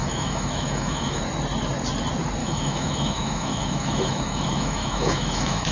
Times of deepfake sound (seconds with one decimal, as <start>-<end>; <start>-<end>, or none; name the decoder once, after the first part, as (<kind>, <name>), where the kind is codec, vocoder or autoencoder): 0.0-1.2 (autoencoder, DAC-VAE); 2.4-5.7